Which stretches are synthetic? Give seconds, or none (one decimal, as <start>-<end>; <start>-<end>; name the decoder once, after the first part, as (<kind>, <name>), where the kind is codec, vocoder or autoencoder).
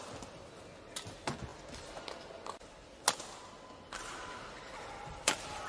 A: none